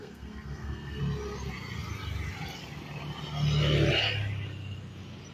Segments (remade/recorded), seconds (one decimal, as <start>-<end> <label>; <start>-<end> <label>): 0.0-1.0 remade; 1.0-5.3 recorded